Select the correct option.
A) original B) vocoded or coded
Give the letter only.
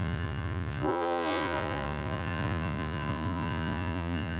B